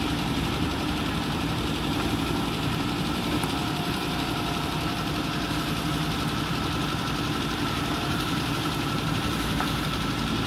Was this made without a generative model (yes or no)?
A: no